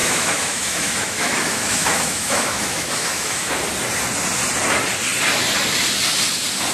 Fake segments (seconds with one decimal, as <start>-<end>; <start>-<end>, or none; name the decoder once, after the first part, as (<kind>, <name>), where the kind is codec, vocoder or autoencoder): 0.0-3.5 (autoencoder, DAC-VAE)